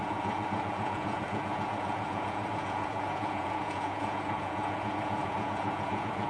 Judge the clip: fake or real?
fake